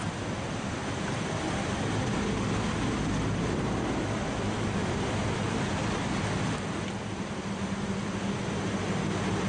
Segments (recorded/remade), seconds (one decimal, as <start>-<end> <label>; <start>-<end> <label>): 0.0-9.5 recorded